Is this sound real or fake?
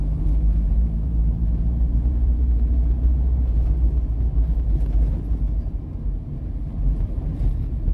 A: fake